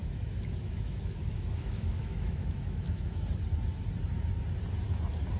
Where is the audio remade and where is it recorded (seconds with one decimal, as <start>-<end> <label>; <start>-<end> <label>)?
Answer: 0.0-3.2 remade; 3.2-5.4 recorded